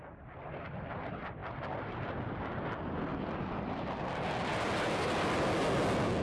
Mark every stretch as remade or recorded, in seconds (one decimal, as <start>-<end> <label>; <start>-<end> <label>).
0.0-1.4 recorded; 1.4-2.4 remade; 2.4-6.2 recorded